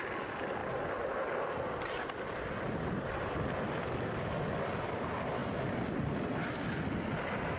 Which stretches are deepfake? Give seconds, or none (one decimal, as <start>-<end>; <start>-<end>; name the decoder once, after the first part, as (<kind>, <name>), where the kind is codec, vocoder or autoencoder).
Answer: 5.4-6.5 (vocoder, BigVGAN v2)